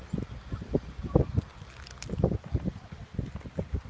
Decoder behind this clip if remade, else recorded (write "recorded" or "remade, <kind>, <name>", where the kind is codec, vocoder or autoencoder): recorded